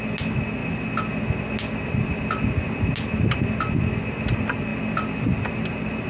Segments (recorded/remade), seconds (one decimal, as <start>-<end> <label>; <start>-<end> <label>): 0.0-6.1 recorded

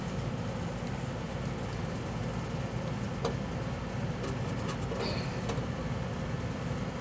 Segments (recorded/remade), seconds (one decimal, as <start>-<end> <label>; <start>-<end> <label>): 0.0-7.0 recorded

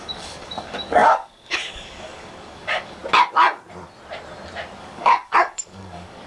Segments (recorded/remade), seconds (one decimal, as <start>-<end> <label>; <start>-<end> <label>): 0.0-3.0 remade; 3.0-4.8 recorded; 4.8-6.3 remade

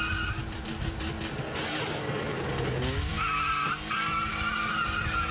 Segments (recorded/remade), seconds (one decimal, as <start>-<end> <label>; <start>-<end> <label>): 0.0-2.3 recorded; 2.3-3.1 remade; 3.1-5.3 recorded

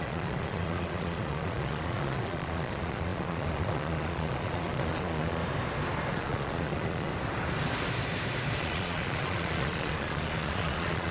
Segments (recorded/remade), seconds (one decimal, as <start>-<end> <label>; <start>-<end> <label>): 0.0-5.4 remade; 5.4-6.1 recorded; 6.1-7.1 remade; 7.1-8.6 recorded; 8.6-11.1 remade

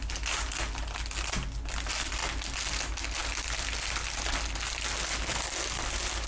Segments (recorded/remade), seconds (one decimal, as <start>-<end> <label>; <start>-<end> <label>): 0.0-6.3 recorded

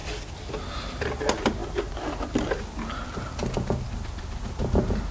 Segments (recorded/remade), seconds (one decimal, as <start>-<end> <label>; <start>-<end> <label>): 0.0-5.1 recorded

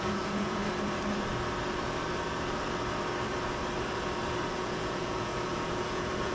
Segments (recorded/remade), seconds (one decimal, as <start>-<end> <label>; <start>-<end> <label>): 0.0-0.6 remade; 0.6-4.4 recorded; 4.4-6.3 remade